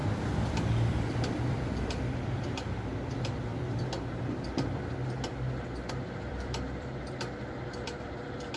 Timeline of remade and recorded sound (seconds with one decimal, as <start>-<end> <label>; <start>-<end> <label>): 0.0-3.5 remade; 3.5-5.9 recorded; 5.9-8.6 remade